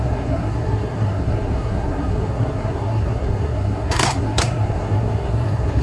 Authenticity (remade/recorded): remade